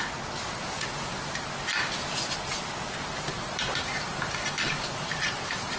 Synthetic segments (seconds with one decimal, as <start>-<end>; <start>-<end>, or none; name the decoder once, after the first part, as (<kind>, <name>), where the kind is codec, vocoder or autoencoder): 0.0-1.1 (vocoder, BigVGAN v2); 3.0-5.8